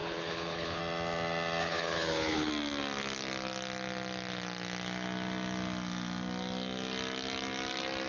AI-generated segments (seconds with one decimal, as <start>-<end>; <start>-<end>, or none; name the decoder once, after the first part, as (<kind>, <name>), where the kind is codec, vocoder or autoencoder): 0.0-0.8 (codec, HILCodec); 1.6-2.5

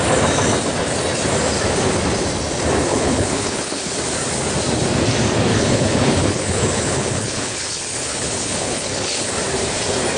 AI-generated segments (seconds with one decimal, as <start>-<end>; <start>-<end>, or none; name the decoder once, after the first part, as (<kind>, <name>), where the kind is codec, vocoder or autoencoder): 2.9-3.9 (codec, HILCodec); 5.5-9.3

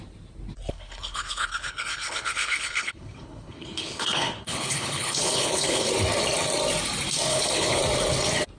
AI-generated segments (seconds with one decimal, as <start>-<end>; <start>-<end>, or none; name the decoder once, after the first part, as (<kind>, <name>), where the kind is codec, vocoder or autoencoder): 0.7-5.9 (codec, HILCodec); 7.3-7.8

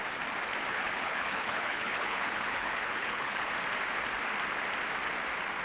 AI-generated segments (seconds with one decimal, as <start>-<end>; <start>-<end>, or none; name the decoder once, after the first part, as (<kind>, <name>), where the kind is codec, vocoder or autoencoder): 0.7-3.5 (codec, HILCodec)

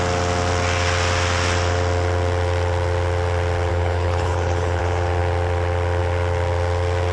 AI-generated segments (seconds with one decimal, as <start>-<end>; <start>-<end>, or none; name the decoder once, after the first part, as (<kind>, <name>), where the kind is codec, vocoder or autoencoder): 3.7-4.8 (codec, HILCodec)

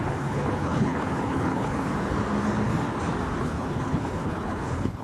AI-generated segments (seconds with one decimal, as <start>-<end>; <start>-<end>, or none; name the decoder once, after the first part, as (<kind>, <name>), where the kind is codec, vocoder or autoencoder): 0.0-1.9 (codec, HILCodec); 3.4-5.0

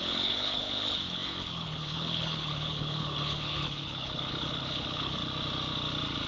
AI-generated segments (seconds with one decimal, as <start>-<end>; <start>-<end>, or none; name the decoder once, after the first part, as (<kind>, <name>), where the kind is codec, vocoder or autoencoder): 0.0-5.2 (codec, HILCodec)

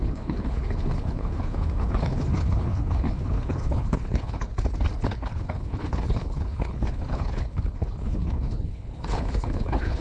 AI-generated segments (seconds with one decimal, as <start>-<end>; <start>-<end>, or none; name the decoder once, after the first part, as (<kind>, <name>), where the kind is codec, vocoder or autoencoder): 0.0-4.5 (codec, HILCodec); 5.1-10.0